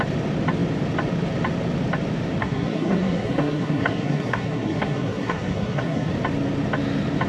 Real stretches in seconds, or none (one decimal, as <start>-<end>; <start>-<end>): 0.0-2.4; 6.1-7.3